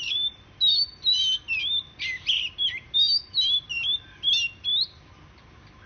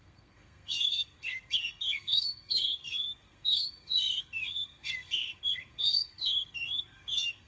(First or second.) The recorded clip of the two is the first